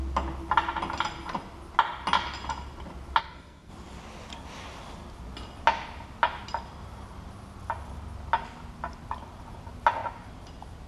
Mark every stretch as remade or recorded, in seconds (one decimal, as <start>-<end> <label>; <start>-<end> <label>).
0.0-3.2 recorded; 3.2-3.7 remade; 3.7-10.9 recorded